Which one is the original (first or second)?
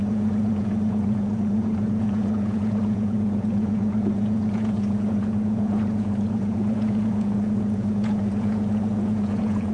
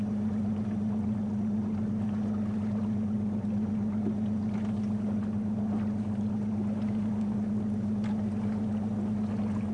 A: second